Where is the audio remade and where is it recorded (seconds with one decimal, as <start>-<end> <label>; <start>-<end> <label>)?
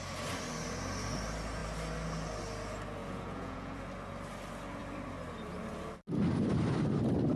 0.0-3.0 recorded; 3.0-3.8 remade; 3.8-7.4 recorded